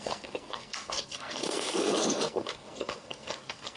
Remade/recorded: remade